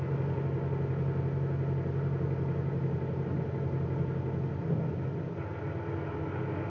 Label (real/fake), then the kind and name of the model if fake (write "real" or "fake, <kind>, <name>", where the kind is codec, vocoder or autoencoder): real